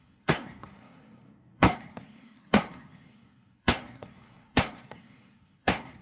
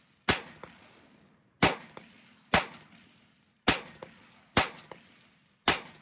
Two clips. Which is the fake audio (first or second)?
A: first